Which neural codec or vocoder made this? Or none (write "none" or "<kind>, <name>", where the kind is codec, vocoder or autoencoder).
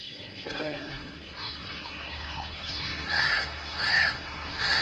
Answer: codec, SNAC